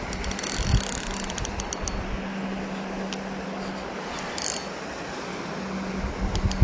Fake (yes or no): no